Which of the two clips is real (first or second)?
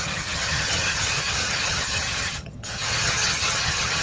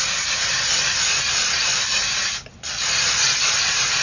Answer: second